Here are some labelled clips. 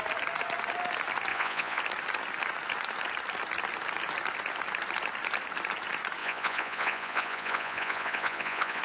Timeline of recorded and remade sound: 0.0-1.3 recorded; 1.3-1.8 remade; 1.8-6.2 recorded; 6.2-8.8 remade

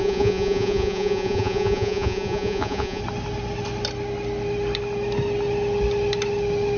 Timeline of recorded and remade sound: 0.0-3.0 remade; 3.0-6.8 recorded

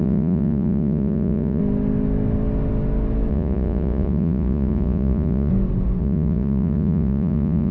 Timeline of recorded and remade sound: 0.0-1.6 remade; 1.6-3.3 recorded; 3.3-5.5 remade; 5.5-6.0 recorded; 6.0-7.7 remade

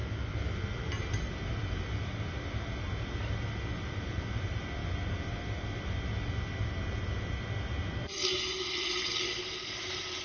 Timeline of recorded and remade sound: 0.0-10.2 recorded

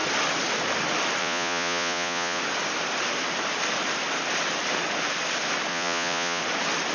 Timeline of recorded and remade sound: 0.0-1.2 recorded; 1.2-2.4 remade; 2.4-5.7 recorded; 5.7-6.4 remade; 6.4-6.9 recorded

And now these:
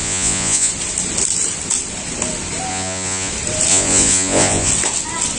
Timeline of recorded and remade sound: 0.0-0.7 remade; 0.7-2.7 recorded; 2.7-3.3 remade; 3.3-3.7 recorded; 3.7-4.7 remade; 4.7-5.4 recorded

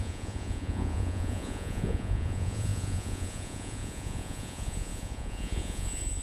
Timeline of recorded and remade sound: 0.0-6.2 remade

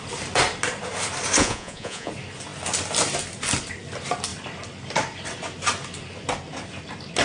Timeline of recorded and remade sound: 0.0-1.4 recorded; 1.4-2.1 remade; 2.1-7.2 recorded